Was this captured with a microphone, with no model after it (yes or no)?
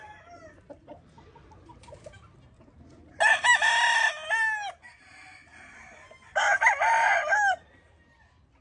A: yes